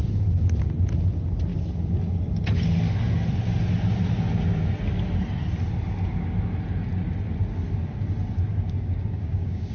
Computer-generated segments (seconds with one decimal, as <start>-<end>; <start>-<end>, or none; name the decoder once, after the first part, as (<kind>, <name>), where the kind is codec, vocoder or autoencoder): 8.5-9.7 (codec, DAC)